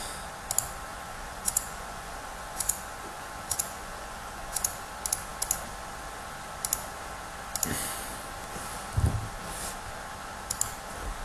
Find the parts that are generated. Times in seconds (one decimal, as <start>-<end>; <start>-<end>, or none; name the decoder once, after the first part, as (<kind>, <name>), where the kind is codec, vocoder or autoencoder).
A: 0.9-4.8 (vocoder, Vocos)